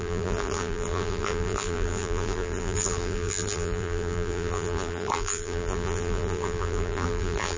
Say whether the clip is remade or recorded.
remade